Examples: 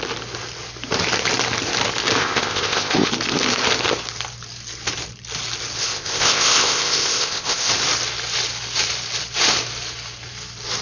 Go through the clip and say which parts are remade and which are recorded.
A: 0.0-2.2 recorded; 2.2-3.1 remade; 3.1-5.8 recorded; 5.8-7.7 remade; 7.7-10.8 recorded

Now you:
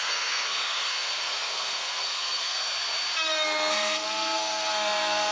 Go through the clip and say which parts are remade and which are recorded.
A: 0.0-2.6 remade; 2.6-3.7 recorded; 3.7-5.3 remade

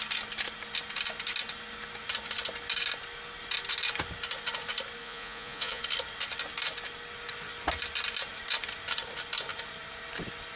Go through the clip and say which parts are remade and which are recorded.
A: 0.0-5.0 recorded; 5.0-5.8 remade; 5.8-10.6 recorded

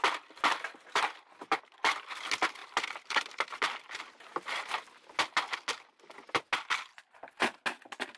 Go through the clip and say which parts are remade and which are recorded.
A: 0.0-8.2 recorded